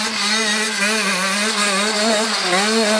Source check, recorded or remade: recorded